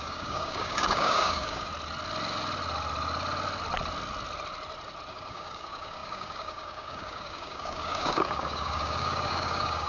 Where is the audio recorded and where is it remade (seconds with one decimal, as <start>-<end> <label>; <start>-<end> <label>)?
0.0-1.7 remade; 1.7-5.1 recorded; 5.1-9.9 remade